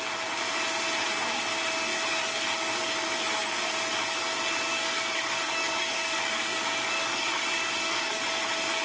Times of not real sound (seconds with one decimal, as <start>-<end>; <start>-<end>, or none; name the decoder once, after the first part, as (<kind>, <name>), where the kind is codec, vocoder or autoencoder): 4.7-8.2 (codec, DAC)